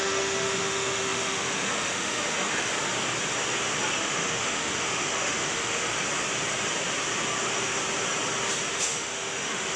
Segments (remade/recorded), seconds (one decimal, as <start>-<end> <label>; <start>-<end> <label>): 0.0-2.7 remade; 2.7-4.0 recorded; 4.0-5.9 remade; 5.9-8.7 recorded; 8.7-9.8 remade